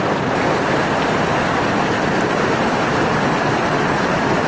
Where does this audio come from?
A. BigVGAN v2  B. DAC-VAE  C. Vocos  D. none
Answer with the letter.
D